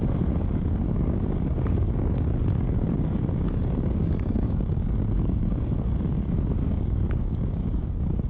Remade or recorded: remade